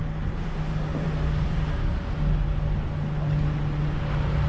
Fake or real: real